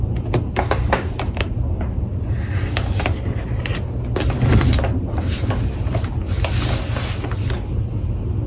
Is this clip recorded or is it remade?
recorded